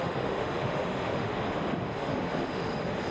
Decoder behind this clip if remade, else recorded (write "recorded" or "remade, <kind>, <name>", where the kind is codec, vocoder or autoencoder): remade, autoencoder, DAC-VAE